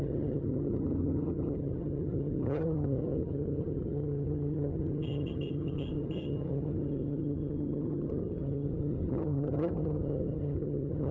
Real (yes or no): no